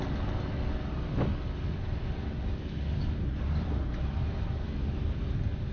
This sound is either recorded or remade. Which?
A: recorded